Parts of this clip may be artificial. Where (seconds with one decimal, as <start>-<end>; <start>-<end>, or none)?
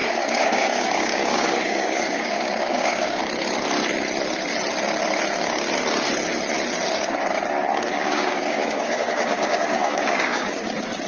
0.0-3.2; 7.9-10.7